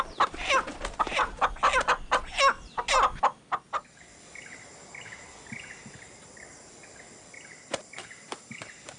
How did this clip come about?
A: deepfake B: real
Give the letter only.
B